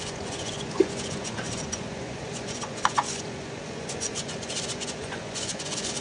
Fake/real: fake